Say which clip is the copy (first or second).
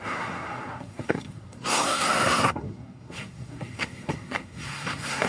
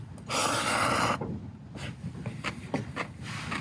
first